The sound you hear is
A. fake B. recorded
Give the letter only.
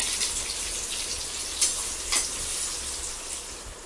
B